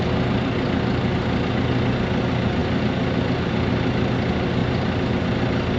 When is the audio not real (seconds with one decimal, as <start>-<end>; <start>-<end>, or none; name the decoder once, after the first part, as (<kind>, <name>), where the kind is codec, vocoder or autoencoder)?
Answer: none